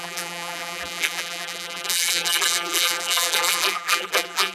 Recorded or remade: remade